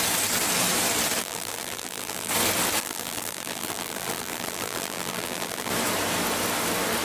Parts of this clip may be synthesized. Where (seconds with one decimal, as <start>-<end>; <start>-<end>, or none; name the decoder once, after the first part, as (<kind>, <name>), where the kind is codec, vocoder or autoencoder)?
1.2-2.3 (vocoder, BigVGAN v2); 2.8-5.7

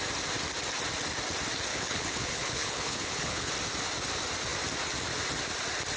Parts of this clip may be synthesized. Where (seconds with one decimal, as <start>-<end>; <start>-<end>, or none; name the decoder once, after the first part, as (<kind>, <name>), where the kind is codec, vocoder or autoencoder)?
1.7-3.5 (codec, HILCodec)

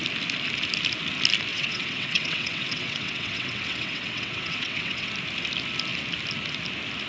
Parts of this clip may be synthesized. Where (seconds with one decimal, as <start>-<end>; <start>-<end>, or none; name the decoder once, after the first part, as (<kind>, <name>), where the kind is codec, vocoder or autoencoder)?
1.5-5.1 (vocoder, WaveNeXt)